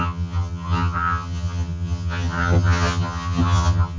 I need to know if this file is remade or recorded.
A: remade